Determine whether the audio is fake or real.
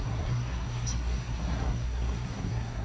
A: fake